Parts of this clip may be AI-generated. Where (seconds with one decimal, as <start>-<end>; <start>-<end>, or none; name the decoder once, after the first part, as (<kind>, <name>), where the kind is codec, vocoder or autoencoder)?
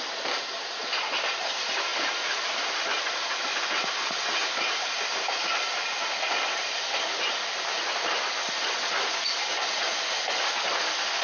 none